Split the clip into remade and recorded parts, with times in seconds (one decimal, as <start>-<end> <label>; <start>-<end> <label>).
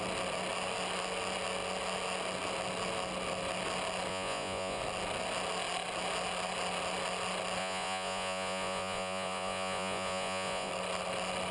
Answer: 0.0-4.1 recorded; 4.1-4.8 remade; 4.8-7.6 recorded; 7.6-10.7 remade; 10.7-11.5 recorded